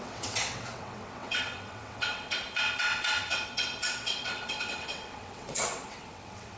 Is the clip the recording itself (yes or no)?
no